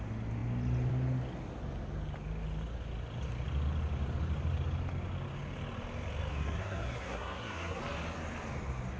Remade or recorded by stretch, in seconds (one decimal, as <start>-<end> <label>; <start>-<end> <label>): 0.0-6.3 recorded; 6.3-7.8 remade; 7.8-9.0 recorded